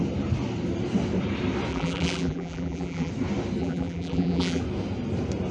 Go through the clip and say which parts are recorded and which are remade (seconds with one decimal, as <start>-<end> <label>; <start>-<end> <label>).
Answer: 0.0-1.7 recorded; 1.7-3.1 remade; 3.1-3.6 recorded; 3.6-4.6 remade; 4.6-5.5 recorded